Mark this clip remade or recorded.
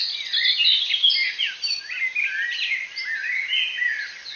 recorded